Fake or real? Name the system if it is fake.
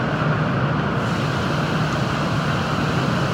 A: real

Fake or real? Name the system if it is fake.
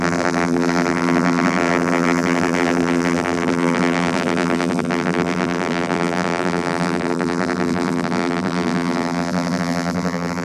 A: fake, vocoder, BigVGAN v2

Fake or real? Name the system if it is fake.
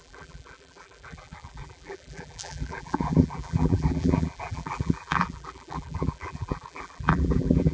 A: fake, vocoder, BigVGAN v2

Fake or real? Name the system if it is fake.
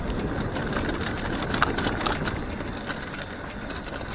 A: real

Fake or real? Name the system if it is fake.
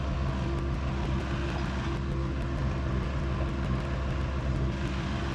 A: real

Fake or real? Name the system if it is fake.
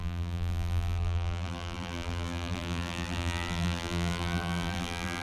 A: fake, vocoder, BigVGAN v2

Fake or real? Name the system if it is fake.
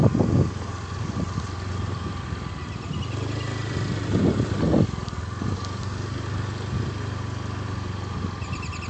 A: real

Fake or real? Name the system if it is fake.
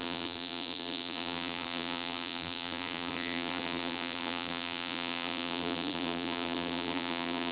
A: fake, vocoder, BigVGAN v2